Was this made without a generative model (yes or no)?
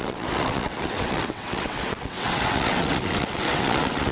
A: no